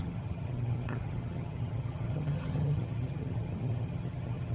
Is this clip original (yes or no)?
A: no